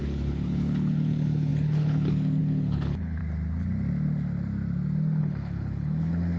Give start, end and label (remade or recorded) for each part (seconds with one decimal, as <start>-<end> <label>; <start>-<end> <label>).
0.0-3.2 remade; 3.2-5.2 recorded; 5.2-6.4 remade

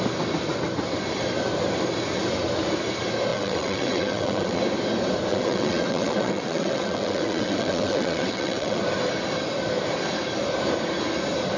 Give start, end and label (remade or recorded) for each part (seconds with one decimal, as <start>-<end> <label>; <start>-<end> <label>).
0.0-3.3 recorded; 3.3-4.6 remade; 4.6-5.3 recorded; 5.3-8.8 remade; 8.8-11.6 recorded

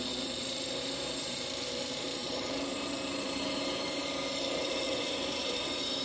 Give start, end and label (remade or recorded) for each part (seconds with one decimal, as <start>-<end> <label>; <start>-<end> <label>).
0.0-4.0 remade; 4.0-4.6 recorded; 4.6-6.0 remade

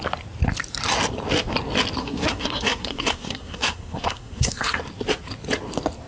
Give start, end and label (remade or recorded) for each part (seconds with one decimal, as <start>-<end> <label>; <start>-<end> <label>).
0.0-2.0 recorded; 2.0-4.8 remade; 4.8-6.1 recorded

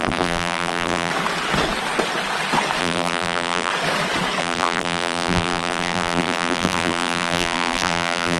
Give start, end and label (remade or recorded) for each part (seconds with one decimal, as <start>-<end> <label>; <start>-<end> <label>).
0.0-1.1 remade; 1.1-2.8 recorded; 2.8-3.7 remade; 3.7-4.4 recorded; 4.4-8.4 remade

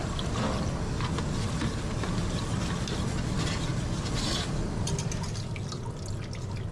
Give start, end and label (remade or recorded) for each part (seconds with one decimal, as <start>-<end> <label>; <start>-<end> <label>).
0.0-6.7 recorded

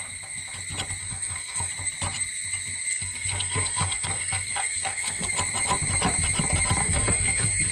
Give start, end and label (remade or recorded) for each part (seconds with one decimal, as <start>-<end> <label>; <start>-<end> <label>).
0.0-1.0 recorded; 1.0-1.7 remade; 1.7-2.9 recorded; 2.9-5.3 remade; 5.3-6.8 recorded; 6.8-7.7 remade